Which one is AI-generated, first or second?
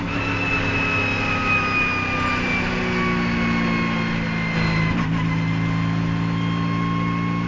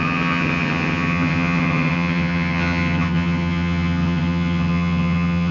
second